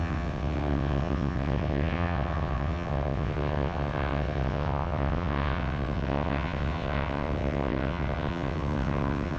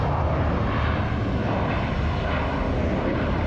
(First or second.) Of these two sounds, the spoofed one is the first